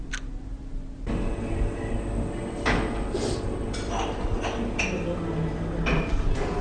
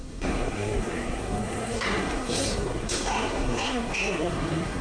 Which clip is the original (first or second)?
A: first